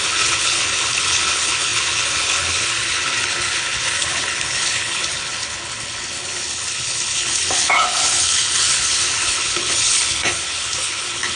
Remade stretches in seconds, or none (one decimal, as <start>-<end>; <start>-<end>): 0.0-11.4